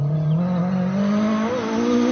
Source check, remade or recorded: recorded